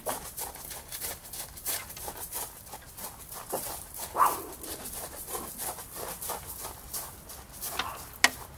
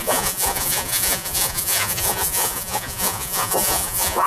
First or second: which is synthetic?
second